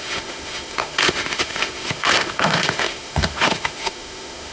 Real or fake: fake